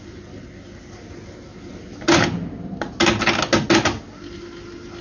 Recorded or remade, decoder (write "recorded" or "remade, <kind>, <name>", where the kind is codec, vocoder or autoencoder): recorded